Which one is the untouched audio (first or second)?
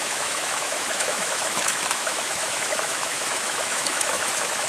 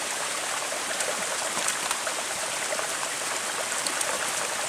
second